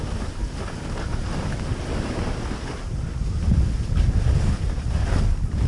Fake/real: real